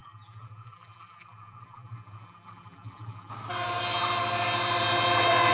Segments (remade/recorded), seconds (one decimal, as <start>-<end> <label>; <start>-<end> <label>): 0.0-3.3 remade; 3.3-5.5 recorded